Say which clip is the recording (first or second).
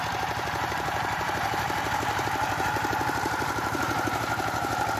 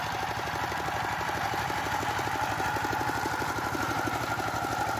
second